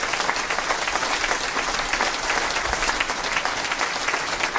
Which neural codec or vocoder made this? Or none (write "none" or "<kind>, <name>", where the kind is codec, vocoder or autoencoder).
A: none